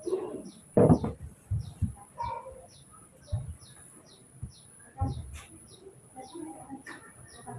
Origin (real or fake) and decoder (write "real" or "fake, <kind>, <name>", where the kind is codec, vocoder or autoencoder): real